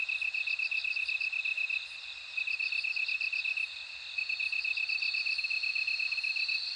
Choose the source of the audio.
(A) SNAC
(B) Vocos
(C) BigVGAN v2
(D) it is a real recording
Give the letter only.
C